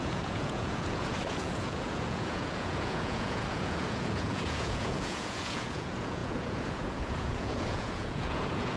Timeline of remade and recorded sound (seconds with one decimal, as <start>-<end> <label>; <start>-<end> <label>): 0.0-8.8 remade